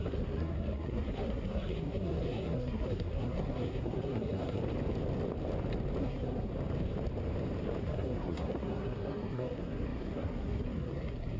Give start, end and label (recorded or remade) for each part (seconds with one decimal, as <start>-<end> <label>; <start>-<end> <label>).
0.0-4.6 remade; 4.6-6.0 recorded; 6.0-6.5 remade; 6.5-7.8 recorded; 7.8-11.4 remade